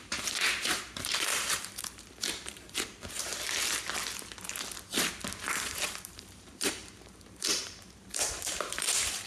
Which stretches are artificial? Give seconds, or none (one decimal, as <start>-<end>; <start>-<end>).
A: 0.0-3.3; 6.0-9.3